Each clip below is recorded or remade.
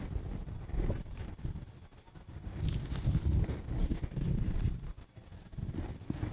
recorded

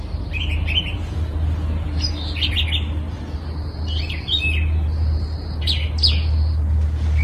recorded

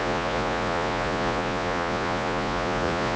remade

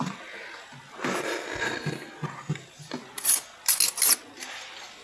recorded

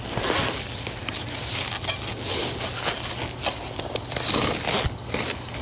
recorded